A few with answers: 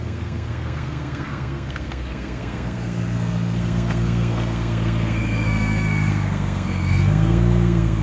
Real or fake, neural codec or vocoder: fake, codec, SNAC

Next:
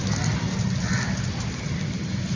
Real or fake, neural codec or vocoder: real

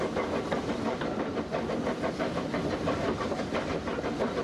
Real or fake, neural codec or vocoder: real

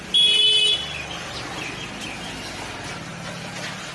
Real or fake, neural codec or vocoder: real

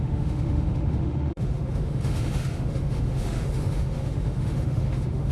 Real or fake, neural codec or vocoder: fake, autoencoder, DAC-VAE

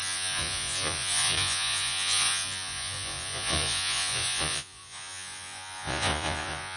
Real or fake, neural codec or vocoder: fake, vocoder, Vocos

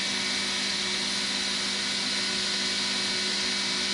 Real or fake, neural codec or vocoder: real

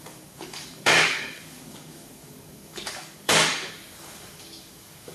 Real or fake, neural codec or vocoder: fake, codec, DAC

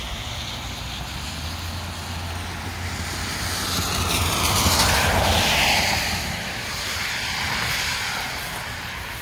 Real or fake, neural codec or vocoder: real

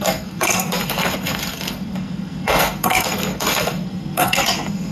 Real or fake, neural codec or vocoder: fake, codec, SNAC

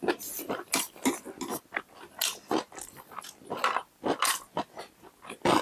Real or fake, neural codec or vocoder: real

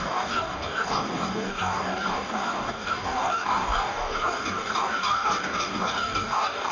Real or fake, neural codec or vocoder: fake, codec, DAC